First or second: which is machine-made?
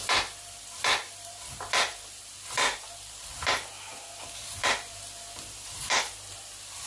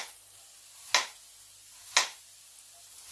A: first